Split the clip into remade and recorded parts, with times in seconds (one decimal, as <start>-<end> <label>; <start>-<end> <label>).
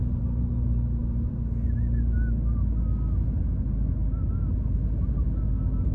0.0-5.9 recorded